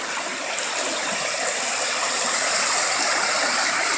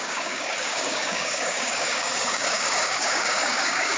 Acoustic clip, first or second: first